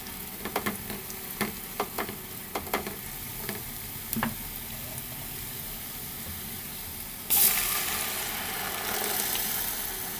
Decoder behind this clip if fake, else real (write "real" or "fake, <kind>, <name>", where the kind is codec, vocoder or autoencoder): real